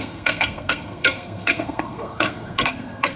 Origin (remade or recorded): remade